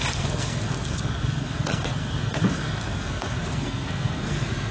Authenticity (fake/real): fake